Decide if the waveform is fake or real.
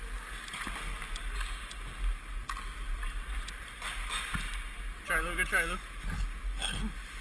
real